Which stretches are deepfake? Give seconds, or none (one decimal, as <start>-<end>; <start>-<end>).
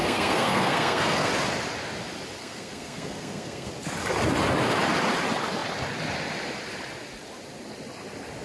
0.0-1.3; 2.4-3.7